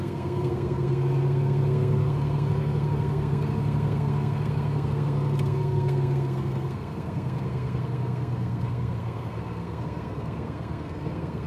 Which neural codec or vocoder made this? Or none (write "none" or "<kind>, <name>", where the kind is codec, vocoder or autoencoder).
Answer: codec, SNAC